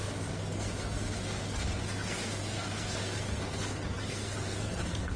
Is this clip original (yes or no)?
no